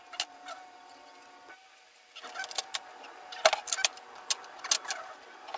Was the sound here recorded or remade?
recorded